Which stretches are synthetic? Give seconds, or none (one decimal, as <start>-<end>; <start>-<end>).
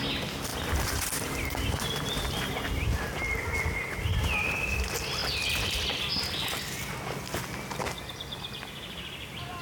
0.5-2.5